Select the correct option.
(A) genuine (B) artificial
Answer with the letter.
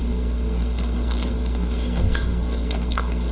B